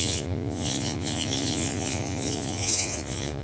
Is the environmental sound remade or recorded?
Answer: remade